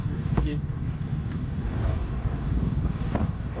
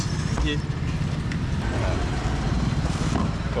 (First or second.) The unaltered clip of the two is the second